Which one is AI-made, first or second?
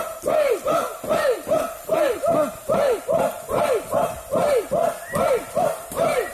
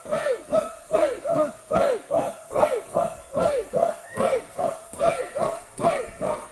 second